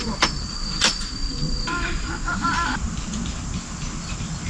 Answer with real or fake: fake